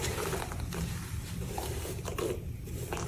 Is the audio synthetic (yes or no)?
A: yes